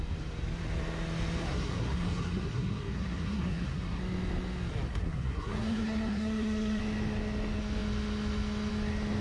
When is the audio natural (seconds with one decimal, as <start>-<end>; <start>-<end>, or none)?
0.0-1.4; 4.0-4.9; 6.8-9.2